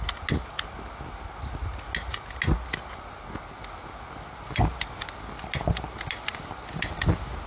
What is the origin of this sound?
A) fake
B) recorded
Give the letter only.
B